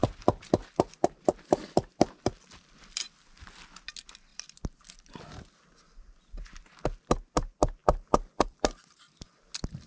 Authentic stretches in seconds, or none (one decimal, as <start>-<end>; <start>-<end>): 3.4-4.3; 5.1-7.8; 9.2-9.9

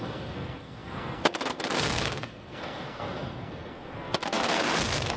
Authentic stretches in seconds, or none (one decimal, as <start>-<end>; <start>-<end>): none